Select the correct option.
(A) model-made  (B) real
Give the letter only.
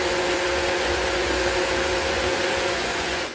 A